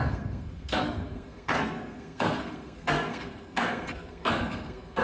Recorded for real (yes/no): no